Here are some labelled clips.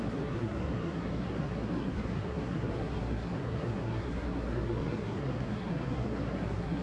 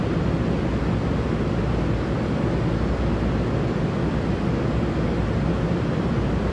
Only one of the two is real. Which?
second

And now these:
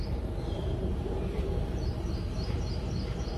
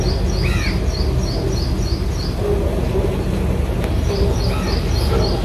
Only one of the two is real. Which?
second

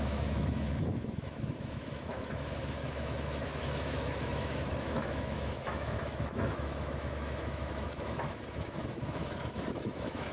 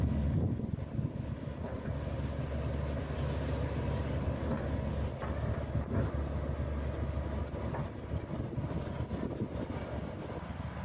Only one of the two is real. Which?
second